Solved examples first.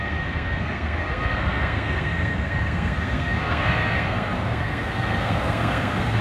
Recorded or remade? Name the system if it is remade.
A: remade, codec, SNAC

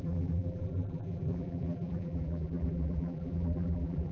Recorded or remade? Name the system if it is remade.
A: remade, vocoder, BigVGAN v2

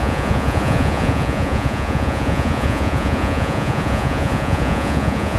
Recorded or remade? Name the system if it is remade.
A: remade, vocoder, Vocos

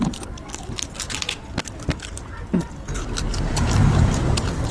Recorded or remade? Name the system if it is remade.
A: recorded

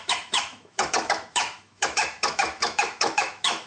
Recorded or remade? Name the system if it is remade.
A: remade, autoencoder, DAC-VAE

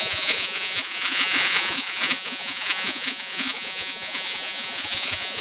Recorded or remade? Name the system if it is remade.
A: remade, vocoder, Vocos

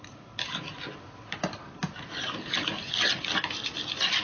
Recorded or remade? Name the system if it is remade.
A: recorded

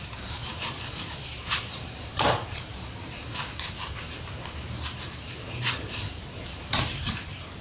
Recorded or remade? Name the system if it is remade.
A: remade, vocoder, BigVGAN v2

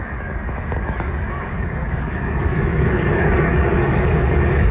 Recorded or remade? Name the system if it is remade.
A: remade, codec, DAC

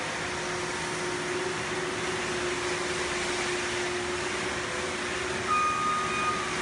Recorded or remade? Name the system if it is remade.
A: recorded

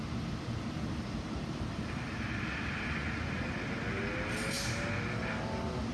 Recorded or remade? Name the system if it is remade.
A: recorded